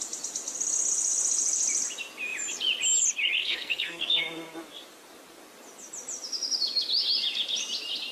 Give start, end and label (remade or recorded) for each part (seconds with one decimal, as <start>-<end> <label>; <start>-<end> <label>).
0.0-3.4 recorded; 3.4-4.2 remade; 4.2-8.1 recorded